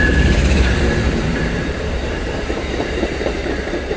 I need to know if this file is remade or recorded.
remade